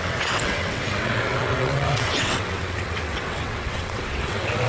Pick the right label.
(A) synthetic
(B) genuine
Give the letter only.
A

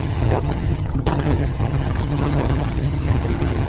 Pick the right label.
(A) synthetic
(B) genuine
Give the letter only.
A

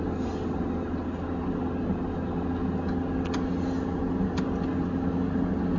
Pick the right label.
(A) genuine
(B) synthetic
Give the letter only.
A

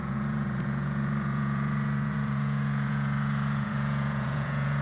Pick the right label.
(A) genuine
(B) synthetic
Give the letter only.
B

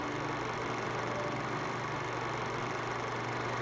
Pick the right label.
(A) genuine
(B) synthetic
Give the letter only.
A